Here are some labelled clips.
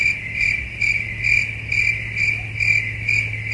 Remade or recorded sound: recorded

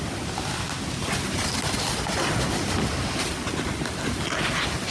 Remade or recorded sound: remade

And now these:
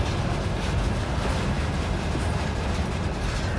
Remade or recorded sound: recorded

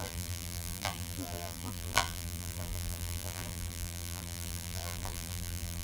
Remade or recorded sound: remade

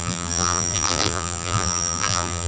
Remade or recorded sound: remade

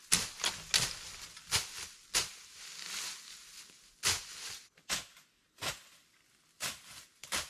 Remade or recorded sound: recorded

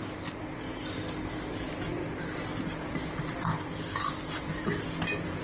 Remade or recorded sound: recorded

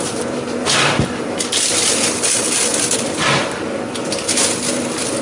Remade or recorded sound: remade